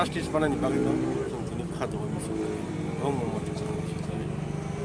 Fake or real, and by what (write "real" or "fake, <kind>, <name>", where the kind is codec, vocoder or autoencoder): real